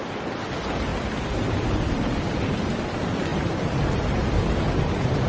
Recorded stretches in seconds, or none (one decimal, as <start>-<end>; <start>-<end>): 0.0-5.3